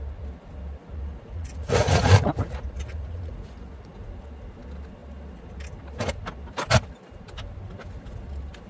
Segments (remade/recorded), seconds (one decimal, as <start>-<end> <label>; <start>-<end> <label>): 0.0-0.8 recorded; 0.8-4.1 remade; 4.1-8.7 recorded